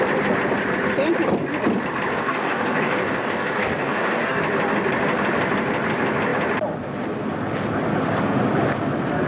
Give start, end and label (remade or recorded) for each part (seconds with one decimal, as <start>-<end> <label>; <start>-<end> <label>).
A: 0.0-2.1 recorded; 2.1-4.4 remade; 4.4-9.3 recorded